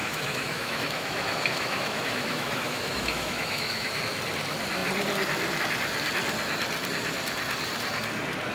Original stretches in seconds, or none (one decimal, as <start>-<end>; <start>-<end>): 4.0-8.5